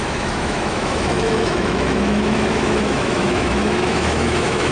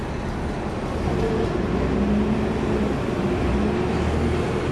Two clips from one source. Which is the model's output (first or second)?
first